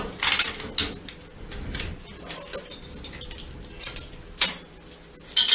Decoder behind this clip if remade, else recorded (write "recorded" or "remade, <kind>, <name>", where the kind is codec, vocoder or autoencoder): recorded